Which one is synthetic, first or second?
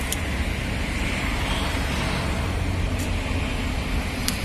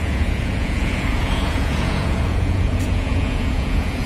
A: second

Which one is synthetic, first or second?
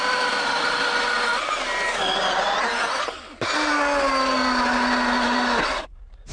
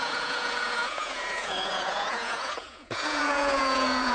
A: second